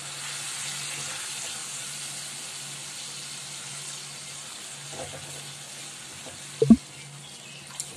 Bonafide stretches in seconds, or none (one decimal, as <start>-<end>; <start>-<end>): 0.0-8.0